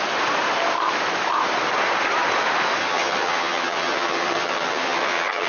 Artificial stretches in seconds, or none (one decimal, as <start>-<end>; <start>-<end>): 2.8-5.5